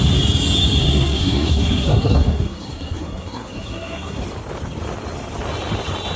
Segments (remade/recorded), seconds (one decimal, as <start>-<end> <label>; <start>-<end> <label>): 0.0-0.8 recorded; 0.8-4.2 remade; 4.2-6.2 recorded